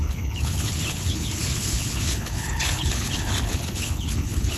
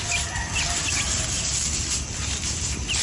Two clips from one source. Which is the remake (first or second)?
first